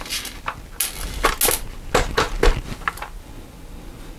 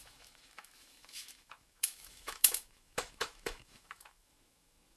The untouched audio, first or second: first